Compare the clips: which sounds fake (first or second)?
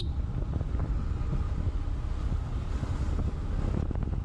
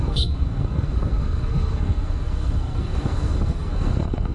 second